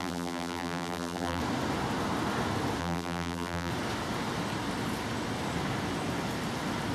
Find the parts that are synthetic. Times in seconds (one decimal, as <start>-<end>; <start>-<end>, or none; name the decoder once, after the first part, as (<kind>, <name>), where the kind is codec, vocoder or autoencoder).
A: 0.0-1.4 (vocoder, BigVGAN v2); 2.8-3.7